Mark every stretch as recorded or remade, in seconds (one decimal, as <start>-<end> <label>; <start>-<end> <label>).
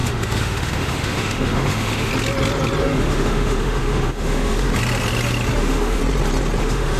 0.0-2.1 remade; 2.1-2.8 recorded; 2.8-4.7 remade; 4.7-5.6 recorded; 5.6-6.0 remade; 6.0-6.6 recorded; 6.6-7.0 remade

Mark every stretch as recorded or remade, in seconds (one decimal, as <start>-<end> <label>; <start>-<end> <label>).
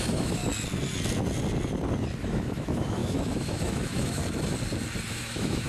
0.0-0.4 remade; 0.4-2.2 recorded; 2.2-4.2 remade; 4.2-5.1 recorded; 5.1-5.7 remade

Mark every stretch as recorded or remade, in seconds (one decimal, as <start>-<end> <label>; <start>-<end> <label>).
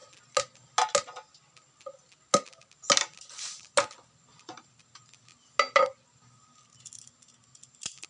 0.0-8.1 recorded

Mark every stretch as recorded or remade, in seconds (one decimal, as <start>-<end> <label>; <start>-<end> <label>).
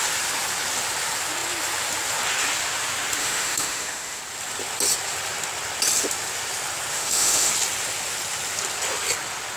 0.0-3.2 recorded; 3.2-4.2 remade; 4.2-6.9 recorded; 6.9-7.5 remade; 7.5-9.6 recorded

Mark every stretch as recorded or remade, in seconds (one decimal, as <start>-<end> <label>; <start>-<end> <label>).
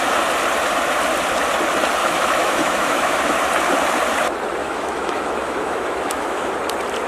0.0-2.0 recorded; 2.0-3.2 remade; 3.2-4.6 recorded; 4.6-6.5 remade; 6.5-7.1 recorded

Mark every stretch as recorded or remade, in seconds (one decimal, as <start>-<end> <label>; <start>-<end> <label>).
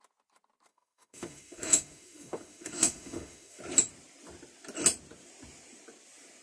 0.0-0.7 recorded; 0.7-3.6 remade; 3.6-6.4 recorded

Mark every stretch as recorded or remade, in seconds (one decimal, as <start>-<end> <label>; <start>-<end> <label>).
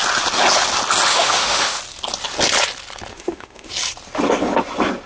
0.0-1.1 recorded; 1.1-1.8 remade; 1.8-3.1 recorded; 3.1-3.7 remade; 3.7-5.1 recorded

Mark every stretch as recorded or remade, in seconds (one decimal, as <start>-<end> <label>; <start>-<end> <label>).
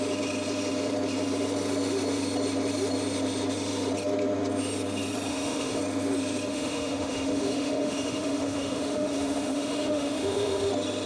0.0-5.3 recorded; 5.3-5.8 remade; 5.8-6.5 recorded; 6.5-10.7 remade; 10.7-11.1 recorded